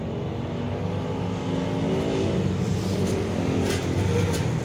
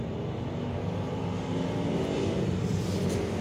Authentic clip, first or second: first